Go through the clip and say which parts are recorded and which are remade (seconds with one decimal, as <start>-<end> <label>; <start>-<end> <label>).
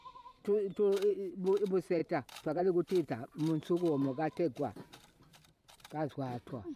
0.0-1.1 remade; 1.1-2.0 recorded; 2.0-6.1 remade; 6.1-6.8 recorded